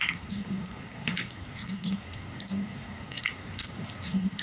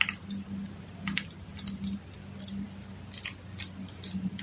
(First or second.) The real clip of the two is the second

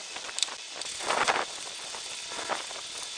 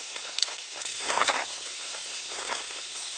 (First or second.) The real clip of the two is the first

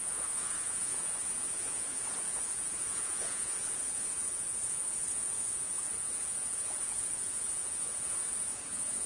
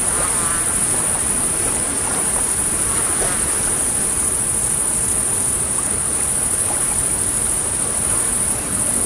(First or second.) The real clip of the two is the second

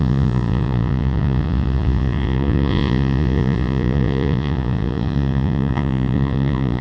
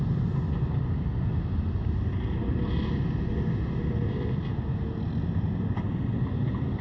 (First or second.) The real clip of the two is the second